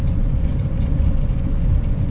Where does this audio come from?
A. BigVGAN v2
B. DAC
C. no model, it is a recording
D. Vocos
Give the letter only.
D